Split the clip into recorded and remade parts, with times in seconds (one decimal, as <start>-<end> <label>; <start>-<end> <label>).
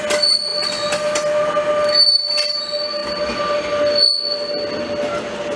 0.0-5.6 recorded